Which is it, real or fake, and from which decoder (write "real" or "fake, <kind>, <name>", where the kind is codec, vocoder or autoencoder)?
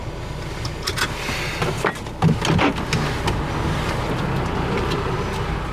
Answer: real